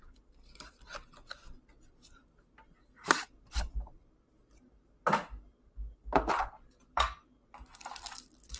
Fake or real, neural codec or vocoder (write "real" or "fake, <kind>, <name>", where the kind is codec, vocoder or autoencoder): fake, vocoder, BigVGAN v2